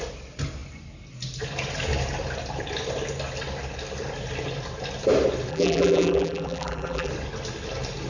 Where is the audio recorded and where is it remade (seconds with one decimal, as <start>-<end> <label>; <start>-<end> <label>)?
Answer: 0.0-5.5 recorded; 5.5-7.1 remade; 7.1-8.1 recorded